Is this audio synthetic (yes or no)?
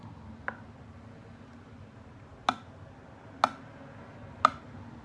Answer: no